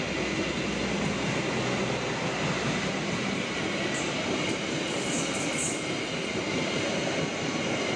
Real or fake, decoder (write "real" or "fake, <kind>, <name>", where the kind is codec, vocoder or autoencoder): real